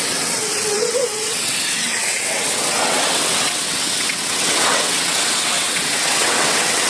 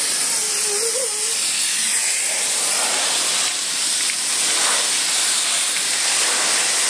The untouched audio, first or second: second